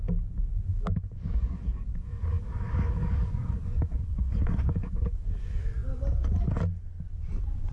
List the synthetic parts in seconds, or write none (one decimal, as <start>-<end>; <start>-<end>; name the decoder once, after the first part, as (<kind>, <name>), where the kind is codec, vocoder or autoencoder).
0.7-5.3 (codec, DAC)

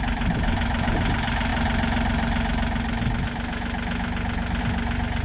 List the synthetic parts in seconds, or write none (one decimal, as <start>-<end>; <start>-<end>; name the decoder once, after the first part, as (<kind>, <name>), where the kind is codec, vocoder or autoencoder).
none

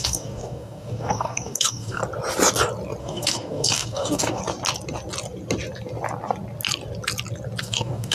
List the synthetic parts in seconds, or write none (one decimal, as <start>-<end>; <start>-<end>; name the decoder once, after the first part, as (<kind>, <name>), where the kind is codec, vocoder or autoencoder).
0.0-2.0 (codec, DAC); 3.0-4.4; 7.6-8.1